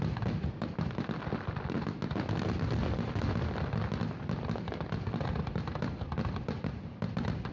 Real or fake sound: real